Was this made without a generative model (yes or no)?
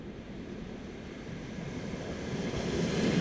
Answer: yes